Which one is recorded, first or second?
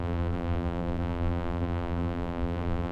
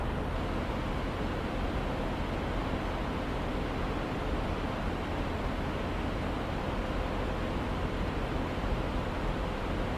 second